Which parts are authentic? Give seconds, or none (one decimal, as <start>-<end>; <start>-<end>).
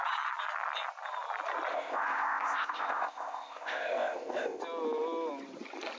0.0-1.7; 4.6-6.0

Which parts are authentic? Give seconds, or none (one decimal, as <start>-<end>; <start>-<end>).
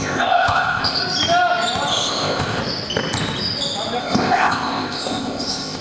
1.0-1.9; 2.6-4.0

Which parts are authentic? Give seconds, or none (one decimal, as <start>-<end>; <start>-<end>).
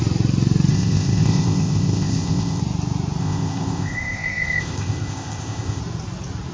0.0-0.7; 2.6-3.2; 5.8-6.5